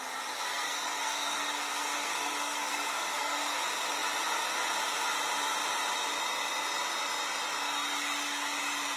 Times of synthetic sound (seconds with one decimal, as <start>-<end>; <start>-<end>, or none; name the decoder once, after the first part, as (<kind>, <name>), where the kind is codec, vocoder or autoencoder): 0.5-3.6 (codec, SNAC)